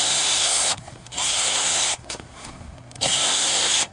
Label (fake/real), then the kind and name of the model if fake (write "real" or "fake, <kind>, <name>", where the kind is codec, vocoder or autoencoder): fake, codec, SNAC